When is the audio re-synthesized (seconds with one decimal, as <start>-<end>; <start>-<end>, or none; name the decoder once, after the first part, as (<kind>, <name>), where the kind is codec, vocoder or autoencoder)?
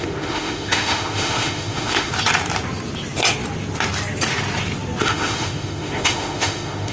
0.0-2.1 (autoencoder, DAC-VAE); 5.0-6.9